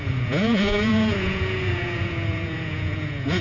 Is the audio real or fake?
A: fake